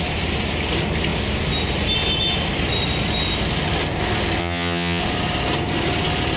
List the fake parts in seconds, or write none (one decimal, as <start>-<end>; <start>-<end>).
4.4-5.0